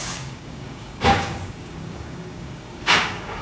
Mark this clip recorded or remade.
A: remade